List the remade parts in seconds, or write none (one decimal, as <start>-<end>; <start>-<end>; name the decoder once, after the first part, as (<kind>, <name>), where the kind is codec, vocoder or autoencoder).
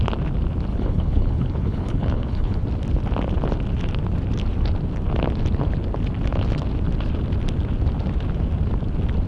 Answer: 0.7-2.6 (codec, HILCodec)